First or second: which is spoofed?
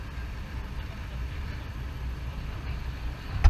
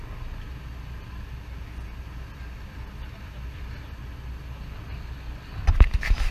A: first